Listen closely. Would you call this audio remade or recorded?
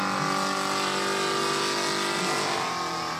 recorded